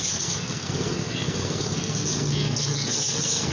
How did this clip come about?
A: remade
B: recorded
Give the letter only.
A